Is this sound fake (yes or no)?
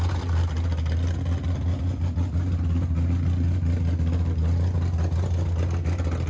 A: no